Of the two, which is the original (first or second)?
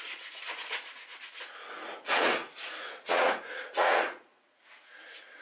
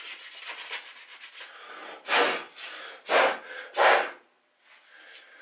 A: second